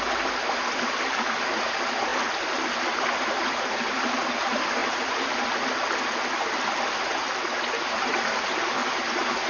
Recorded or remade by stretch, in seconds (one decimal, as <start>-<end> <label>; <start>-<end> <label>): 0.0-9.5 recorded